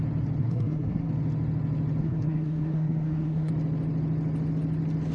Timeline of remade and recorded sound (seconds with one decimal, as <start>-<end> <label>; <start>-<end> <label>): 0.0-0.4 recorded; 0.4-1.1 remade; 1.1-2.0 recorded; 2.0-3.5 remade; 3.5-5.1 recorded